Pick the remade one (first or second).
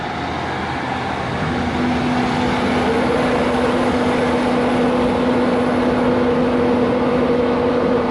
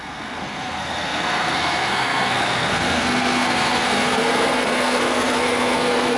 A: second